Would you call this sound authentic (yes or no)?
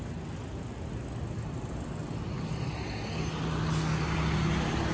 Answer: yes